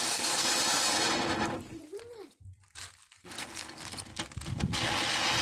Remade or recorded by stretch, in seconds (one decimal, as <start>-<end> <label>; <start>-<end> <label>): 0.0-0.5 remade; 0.5-3.1 recorded; 3.1-4.1 remade; 4.1-5.4 recorded